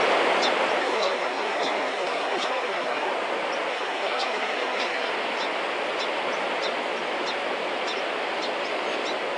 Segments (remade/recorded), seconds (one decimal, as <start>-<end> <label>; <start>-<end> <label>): 0.0-0.8 recorded; 0.8-3.1 remade; 3.1-3.7 recorded; 3.7-5.1 remade; 5.1-9.4 recorded